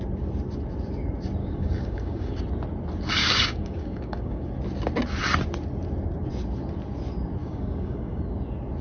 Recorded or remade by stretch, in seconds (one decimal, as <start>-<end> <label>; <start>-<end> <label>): 0.0-1.4 recorded; 1.4-2.4 remade; 2.4-3.2 recorded; 3.2-4.5 remade; 4.5-7.4 recorded; 7.4-8.2 remade; 8.2-8.8 recorded